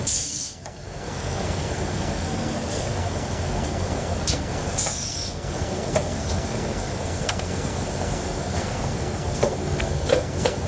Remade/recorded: remade